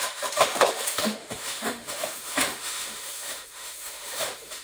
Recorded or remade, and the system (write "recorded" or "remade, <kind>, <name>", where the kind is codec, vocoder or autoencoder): remade, autoencoder, DAC-VAE